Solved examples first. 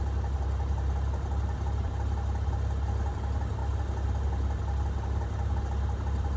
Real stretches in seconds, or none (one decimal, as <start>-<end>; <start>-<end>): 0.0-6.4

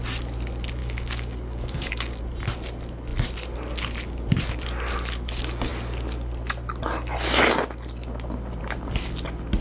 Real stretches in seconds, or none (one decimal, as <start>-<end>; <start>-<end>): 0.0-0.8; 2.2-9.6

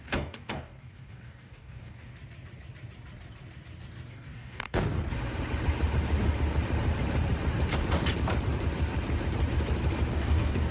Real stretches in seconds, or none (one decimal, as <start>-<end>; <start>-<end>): 2.1-4.1; 4.9-10.1

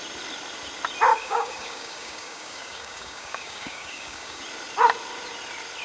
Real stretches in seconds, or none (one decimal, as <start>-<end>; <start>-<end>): 0.0-1.1; 4.4-5.8

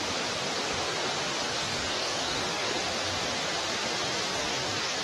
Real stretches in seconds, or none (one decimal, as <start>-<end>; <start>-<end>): 0.0-1.6; 2.7-4.3

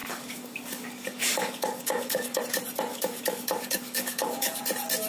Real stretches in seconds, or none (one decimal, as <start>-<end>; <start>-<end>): 2.4-2.9; 4.6-5.1

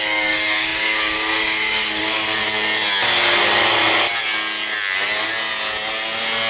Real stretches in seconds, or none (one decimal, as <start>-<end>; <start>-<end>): 2.4-6.5

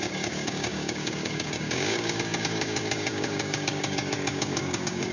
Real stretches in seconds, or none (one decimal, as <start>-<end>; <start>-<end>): none